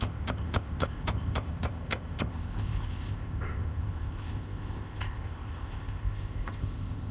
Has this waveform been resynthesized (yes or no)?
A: yes